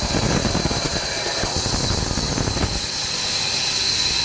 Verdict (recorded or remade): recorded